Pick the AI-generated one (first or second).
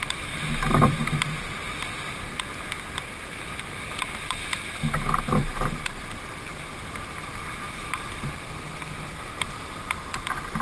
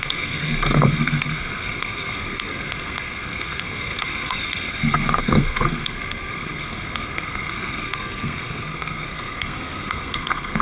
second